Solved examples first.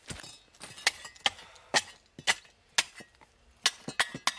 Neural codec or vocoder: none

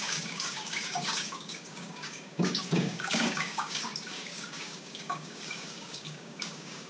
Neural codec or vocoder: codec, DAC